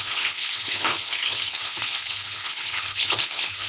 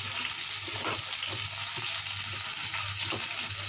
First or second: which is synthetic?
first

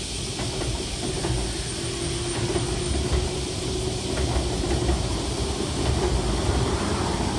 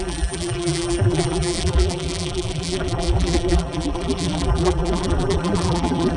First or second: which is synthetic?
second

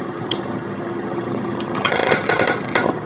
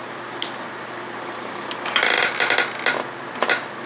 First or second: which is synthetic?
first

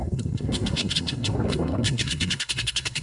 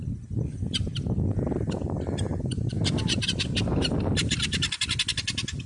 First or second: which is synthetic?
first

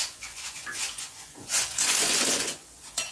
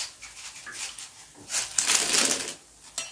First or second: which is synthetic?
first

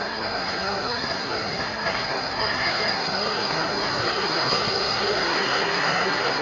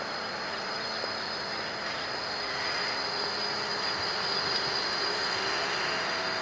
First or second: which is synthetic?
first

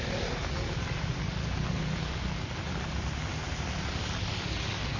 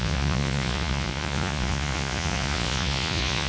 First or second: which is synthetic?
second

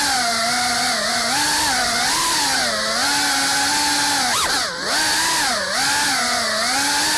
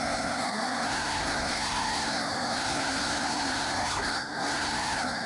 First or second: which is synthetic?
second